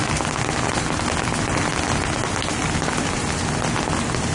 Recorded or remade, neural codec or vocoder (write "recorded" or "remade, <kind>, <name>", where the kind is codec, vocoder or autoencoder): recorded